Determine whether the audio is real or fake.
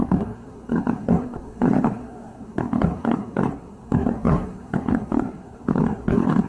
fake